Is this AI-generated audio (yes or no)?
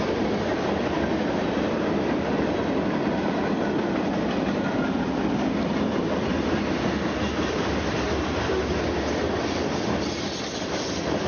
no